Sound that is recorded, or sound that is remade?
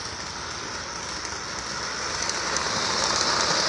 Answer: recorded